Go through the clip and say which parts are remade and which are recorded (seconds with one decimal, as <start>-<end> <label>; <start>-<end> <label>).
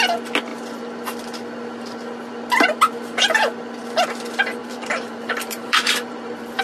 0.0-4.6 recorded; 4.6-6.6 remade